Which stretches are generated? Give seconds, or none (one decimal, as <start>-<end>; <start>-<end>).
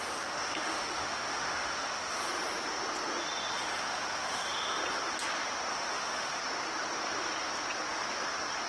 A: 0.0-2.3; 3.6-4.8; 5.7-6.4